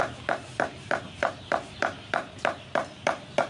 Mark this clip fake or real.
fake